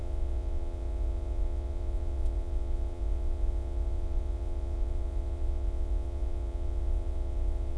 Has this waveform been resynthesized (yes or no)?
yes